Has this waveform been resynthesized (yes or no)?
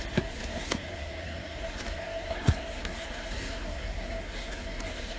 yes